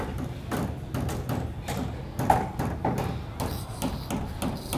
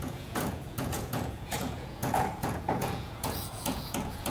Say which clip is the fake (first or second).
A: second